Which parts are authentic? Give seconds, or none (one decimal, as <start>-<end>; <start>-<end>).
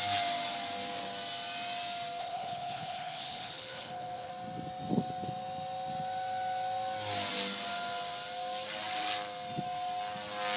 0.0-2.2; 4.3-10.6